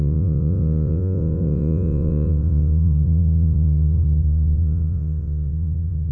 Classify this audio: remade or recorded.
remade